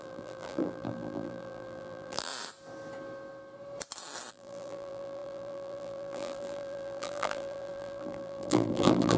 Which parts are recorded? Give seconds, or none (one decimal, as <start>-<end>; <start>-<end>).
2.3-4.3